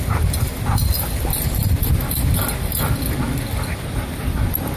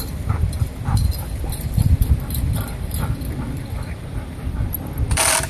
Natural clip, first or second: first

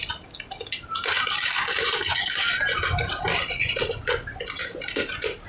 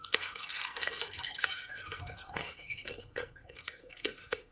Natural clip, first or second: first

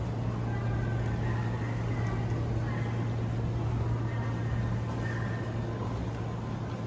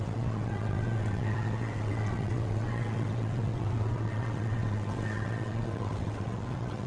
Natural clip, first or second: first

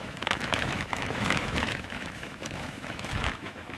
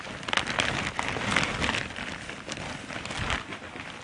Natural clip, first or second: second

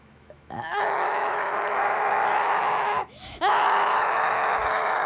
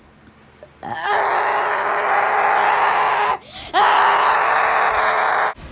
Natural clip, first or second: second